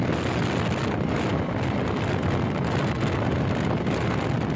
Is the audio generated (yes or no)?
no